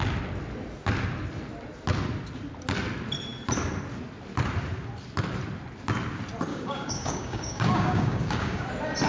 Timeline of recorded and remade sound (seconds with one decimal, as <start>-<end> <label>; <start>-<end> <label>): 0.0-6.5 recorded; 6.5-8.7 remade; 8.7-9.1 recorded